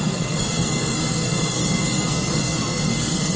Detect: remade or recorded remade